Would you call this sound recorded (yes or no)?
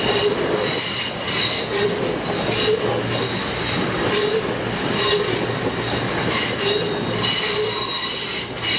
yes